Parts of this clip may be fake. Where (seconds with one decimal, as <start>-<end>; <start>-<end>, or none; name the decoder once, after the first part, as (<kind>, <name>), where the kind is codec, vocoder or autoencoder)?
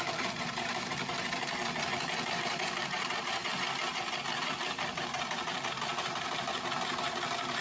0.0-7.6 (vocoder, BigVGAN v2)